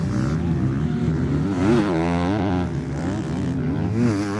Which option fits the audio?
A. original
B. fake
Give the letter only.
A